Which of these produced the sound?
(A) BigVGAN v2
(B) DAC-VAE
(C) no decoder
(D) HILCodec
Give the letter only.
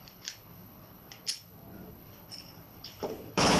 D